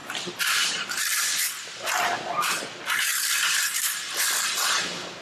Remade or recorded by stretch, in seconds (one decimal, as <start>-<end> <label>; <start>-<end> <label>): 0.0-5.2 recorded